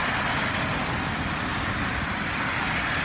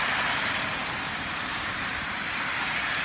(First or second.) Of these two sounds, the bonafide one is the first